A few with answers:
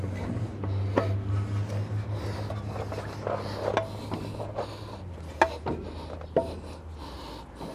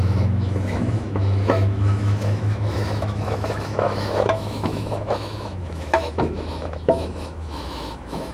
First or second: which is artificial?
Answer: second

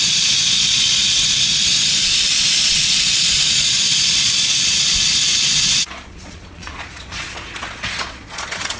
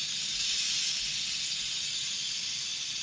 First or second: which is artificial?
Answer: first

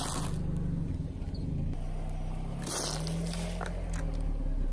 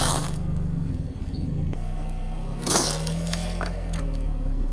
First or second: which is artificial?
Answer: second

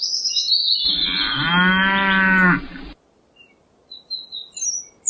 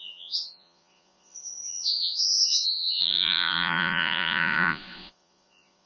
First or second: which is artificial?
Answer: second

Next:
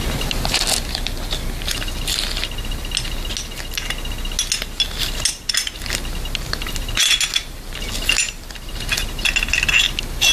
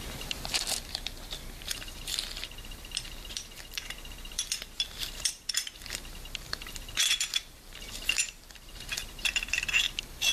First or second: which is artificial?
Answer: second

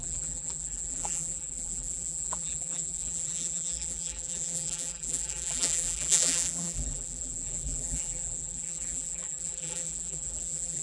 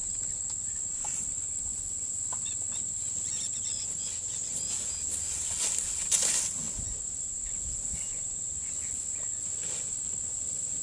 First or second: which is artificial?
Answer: first